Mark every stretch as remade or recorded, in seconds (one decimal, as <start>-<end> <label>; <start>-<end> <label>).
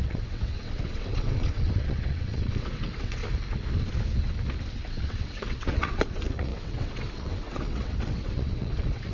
0.0-3.2 remade; 3.2-4.9 recorded; 4.9-9.1 remade